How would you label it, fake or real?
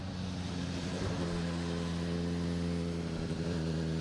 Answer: real